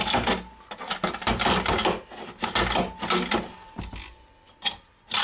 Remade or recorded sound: recorded